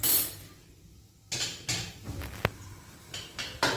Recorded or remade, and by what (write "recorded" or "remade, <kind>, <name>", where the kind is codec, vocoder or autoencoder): recorded